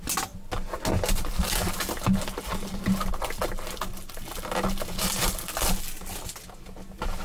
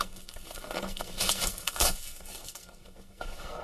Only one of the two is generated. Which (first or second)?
second